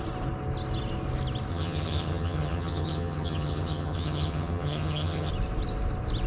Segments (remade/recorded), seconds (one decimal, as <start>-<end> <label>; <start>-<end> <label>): 0.0-1.5 recorded; 1.5-5.3 remade; 5.3-6.3 recorded